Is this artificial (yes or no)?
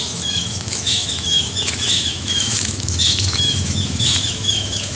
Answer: yes